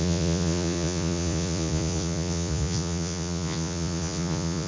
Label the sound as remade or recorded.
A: remade